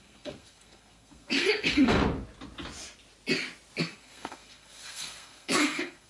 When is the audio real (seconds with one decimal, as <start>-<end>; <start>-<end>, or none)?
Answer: 2.0-3.8